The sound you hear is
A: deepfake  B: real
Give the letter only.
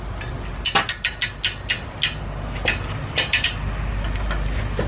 B